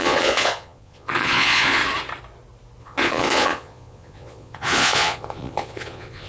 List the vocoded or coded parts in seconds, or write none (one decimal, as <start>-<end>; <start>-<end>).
0.0-1.8; 2.8-6.3